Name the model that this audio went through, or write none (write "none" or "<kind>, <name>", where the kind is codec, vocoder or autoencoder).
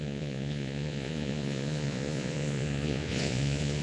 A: vocoder, Vocos